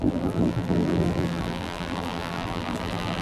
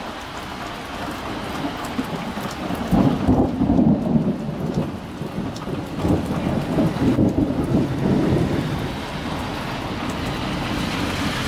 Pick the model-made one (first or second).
first